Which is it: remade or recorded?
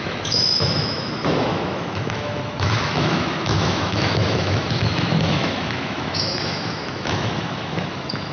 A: remade